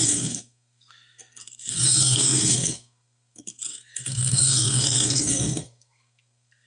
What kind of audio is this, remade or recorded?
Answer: remade